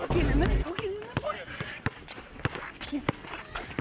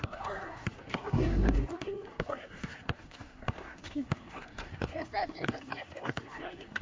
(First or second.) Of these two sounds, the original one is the first